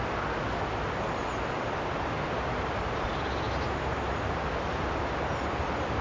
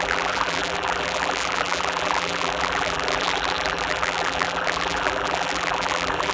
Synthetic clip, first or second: second